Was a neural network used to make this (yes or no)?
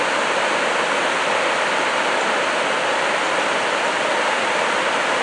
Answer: no